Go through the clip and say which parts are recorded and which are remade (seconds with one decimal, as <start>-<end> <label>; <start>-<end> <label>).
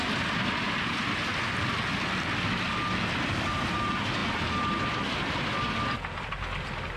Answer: 0.0-7.0 recorded